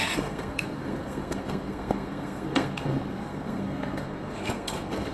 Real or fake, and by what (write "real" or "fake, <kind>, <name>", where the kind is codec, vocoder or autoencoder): fake, codec, SNAC